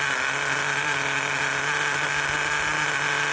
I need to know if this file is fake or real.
real